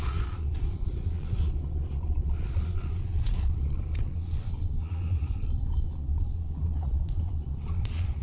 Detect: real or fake fake